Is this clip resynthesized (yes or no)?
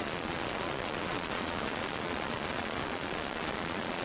yes